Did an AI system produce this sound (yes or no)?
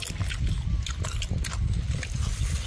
no